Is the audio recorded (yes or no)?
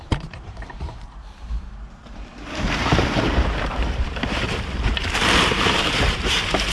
no